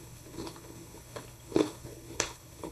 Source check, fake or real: fake